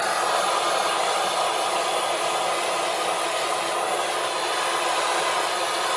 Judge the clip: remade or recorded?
recorded